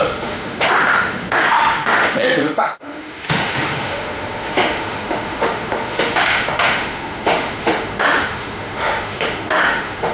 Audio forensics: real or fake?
fake